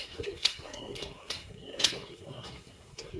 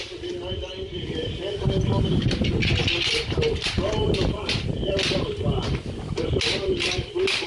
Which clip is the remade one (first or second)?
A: first